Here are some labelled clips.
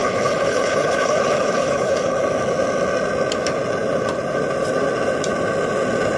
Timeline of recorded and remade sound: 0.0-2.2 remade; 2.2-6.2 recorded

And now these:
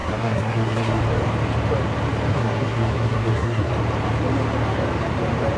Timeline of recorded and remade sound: 0.0-1.0 remade; 1.0-2.3 recorded; 2.3-3.7 remade; 3.7-5.6 recorded

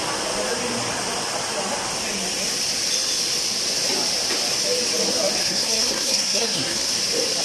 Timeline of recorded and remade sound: 0.0-5.4 recorded; 5.4-6.9 remade; 6.9-7.4 recorded

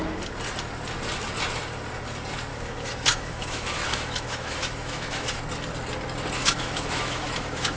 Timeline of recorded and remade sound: 0.0-2.5 recorded; 2.5-5.4 remade; 5.4-6.4 recorded; 6.4-7.8 remade

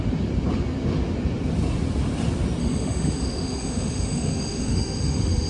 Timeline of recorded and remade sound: 0.0-2.6 recorded; 2.6-5.5 remade

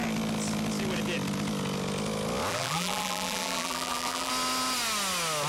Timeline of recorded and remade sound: 0.0-2.5 recorded; 2.5-4.3 remade; 4.3-5.5 recorded